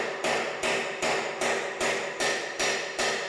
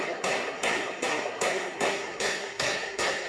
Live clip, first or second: first